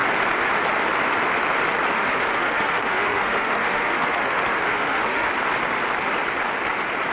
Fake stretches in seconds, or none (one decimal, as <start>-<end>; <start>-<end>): 1.9-5.3